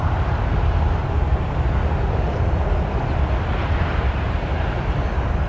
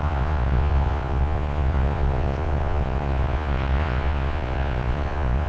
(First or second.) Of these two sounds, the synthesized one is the second